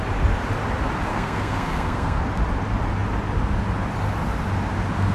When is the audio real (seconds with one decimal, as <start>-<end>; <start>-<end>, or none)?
0.0-1.1; 2.2-5.1